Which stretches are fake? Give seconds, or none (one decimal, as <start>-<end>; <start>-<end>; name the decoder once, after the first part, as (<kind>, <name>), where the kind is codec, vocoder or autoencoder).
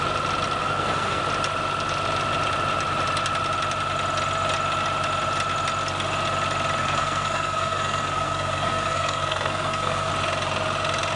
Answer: 0.6-1.2 (codec, SNAC); 6.8-10.1